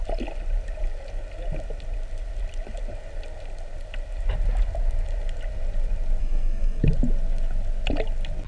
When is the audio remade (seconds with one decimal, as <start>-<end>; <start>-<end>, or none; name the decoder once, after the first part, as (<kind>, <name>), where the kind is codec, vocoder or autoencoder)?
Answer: 6.2-6.8 (codec, SNAC)